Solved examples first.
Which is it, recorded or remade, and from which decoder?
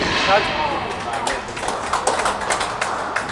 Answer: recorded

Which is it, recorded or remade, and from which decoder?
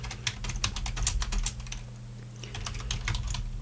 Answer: recorded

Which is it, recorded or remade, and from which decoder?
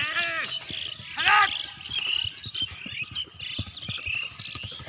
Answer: recorded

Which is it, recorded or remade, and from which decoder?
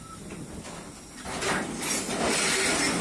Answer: recorded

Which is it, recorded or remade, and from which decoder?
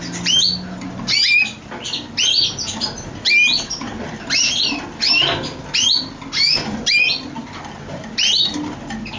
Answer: recorded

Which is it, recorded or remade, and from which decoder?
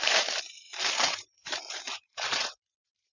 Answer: remade, vocoder, BigVGAN v2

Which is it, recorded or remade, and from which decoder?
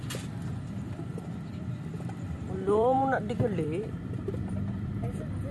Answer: remade, vocoder, BigVGAN v2